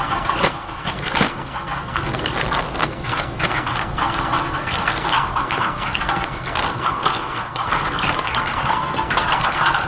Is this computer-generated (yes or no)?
yes